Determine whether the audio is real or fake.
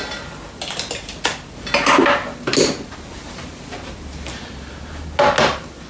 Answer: real